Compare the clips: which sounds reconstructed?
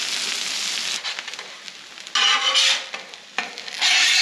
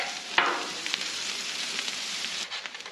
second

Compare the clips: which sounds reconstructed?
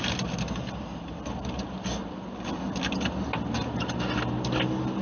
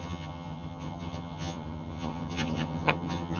second